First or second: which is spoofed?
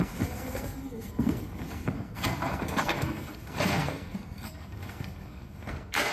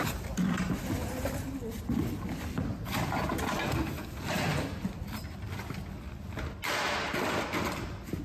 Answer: first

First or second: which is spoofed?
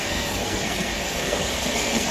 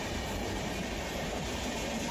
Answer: first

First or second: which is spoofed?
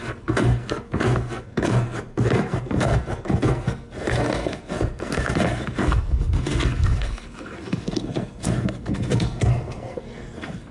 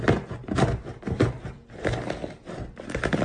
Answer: first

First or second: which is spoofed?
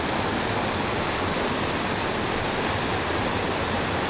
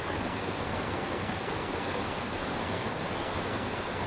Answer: second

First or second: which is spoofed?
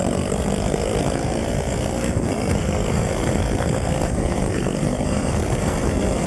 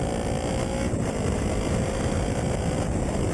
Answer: first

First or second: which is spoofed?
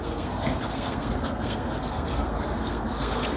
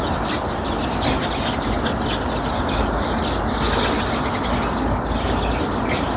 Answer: first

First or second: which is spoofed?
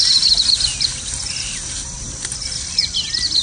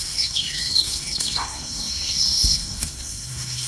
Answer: second